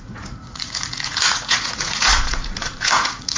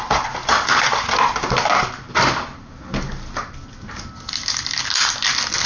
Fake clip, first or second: first